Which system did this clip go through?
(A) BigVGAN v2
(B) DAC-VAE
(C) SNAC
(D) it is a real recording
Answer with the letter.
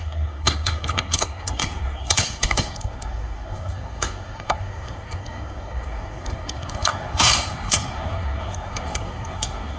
C